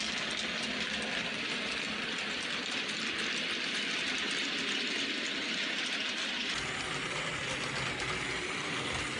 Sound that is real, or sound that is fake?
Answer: real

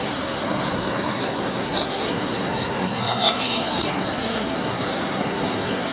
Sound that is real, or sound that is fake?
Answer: fake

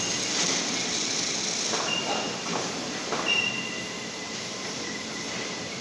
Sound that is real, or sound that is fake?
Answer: real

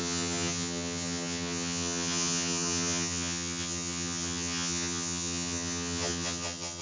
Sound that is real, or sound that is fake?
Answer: fake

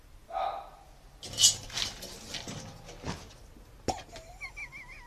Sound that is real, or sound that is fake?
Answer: real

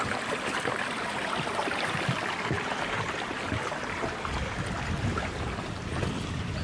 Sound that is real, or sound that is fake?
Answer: real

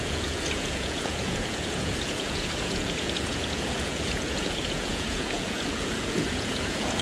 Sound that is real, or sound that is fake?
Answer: fake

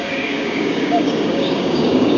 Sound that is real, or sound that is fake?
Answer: fake